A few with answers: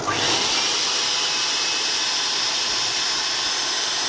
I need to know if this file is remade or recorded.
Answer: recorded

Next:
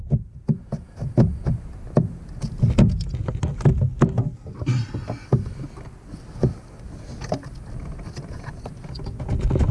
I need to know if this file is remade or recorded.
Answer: recorded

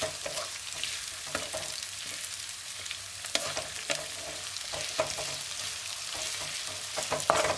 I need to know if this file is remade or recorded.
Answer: recorded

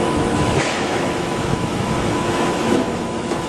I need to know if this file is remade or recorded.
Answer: remade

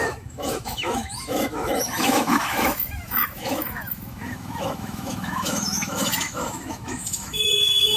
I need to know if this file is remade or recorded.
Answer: remade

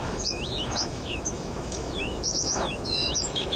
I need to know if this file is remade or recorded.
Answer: remade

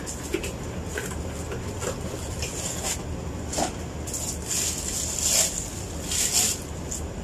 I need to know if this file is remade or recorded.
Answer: recorded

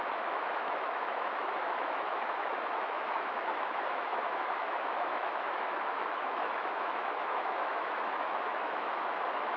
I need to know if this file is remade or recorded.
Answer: remade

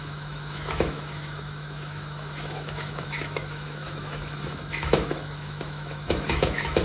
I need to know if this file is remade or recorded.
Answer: remade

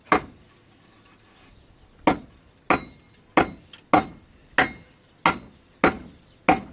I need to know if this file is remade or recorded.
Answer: recorded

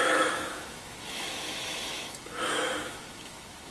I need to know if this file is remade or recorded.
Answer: remade